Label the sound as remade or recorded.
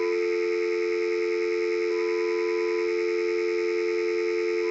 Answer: recorded